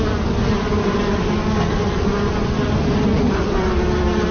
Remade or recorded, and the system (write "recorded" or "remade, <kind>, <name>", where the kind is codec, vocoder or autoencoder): recorded